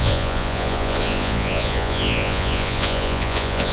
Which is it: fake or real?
fake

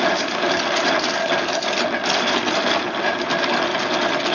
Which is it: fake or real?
real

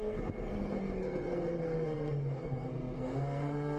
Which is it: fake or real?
fake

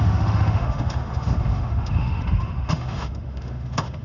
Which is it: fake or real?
fake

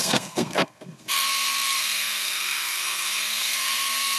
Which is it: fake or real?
fake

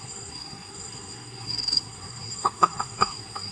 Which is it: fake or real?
fake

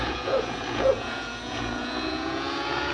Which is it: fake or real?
fake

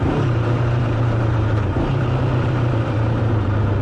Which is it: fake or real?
fake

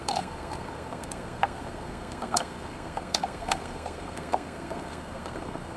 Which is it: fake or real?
fake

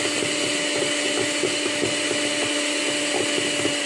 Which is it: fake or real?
real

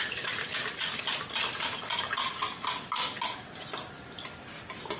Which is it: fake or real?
real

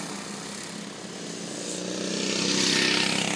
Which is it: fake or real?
real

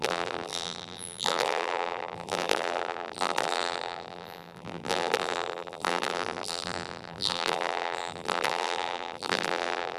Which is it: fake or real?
fake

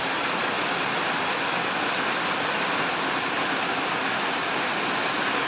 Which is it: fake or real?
real